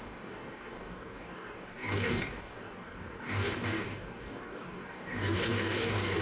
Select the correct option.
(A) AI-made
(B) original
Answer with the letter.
A